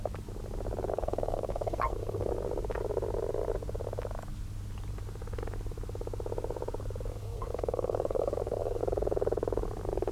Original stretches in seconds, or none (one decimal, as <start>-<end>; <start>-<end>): 0.0-0.9; 2.3-7.1; 8.8-10.1